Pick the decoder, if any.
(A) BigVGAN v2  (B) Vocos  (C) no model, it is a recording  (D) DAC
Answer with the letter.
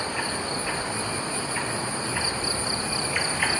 A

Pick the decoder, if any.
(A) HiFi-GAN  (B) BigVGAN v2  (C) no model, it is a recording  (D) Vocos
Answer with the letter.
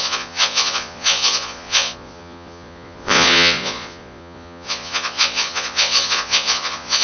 D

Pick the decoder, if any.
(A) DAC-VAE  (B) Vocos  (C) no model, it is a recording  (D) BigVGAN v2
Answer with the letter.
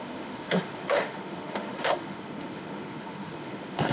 A